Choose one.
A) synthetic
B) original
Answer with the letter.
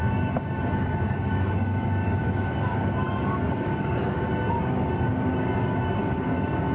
A